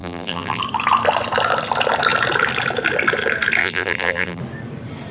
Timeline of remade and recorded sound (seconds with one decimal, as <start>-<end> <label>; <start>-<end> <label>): 0.0-0.6 remade; 0.6-3.6 recorded; 3.6-4.4 remade; 4.4-5.1 recorded